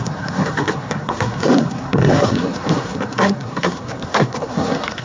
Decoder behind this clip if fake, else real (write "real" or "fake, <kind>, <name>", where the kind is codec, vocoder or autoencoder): fake, codec, SNAC